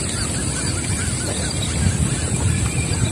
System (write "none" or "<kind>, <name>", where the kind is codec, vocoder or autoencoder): none